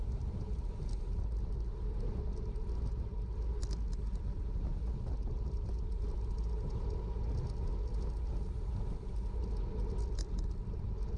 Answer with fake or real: real